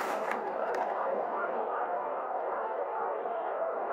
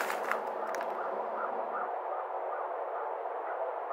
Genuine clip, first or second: second